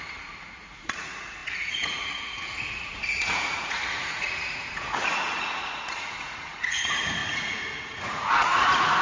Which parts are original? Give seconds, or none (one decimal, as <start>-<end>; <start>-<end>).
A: none